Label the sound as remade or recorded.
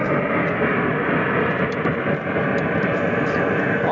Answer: recorded